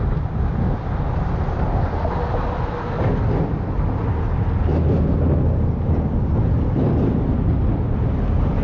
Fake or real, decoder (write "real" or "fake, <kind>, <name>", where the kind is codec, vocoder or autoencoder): real